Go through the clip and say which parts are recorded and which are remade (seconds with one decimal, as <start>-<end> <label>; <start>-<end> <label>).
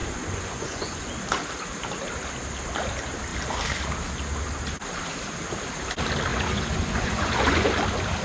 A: 0.0-1.1 remade; 1.1-6.3 recorded; 6.3-7.7 remade; 7.7-8.2 recorded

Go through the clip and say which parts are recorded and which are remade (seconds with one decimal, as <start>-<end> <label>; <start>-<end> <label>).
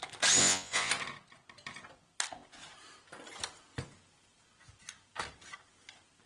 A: 0.0-0.4 recorded; 0.4-0.9 remade; 0.9-6.3 recorded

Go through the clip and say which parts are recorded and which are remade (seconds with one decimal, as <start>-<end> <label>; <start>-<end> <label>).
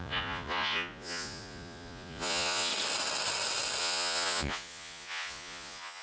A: 0.0-2.7 remade; 2.7-3.8 recorded; 3.8-6.0 remade